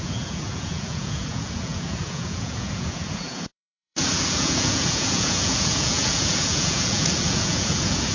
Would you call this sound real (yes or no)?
no